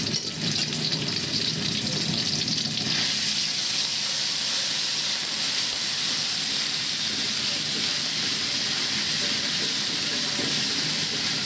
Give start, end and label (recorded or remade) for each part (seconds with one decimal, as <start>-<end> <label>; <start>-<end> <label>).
0.0-11.5 recorded